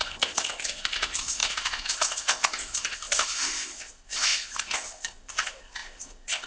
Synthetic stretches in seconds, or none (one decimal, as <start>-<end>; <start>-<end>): 0.0-6.5